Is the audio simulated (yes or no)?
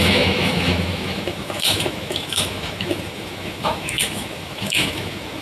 yes